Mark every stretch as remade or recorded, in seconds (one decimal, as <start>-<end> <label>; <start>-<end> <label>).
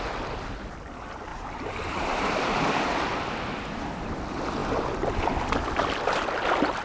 0.0-1.3 recorded; 1.3-3.1 remade; 3.1-6.8 recorded